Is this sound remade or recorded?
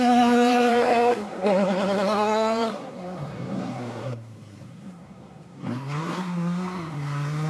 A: remade